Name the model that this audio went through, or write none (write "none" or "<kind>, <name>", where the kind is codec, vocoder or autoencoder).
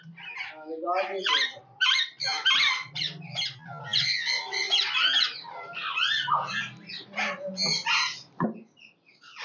none